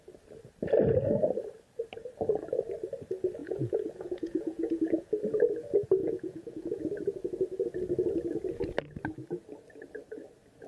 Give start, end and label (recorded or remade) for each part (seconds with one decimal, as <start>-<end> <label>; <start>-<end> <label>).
0.0-3.4 recorded; 3.4-5.1 remade; 5.1-6.0 recorded; 6.0-6.8 remade; 6.8-10.7 recorded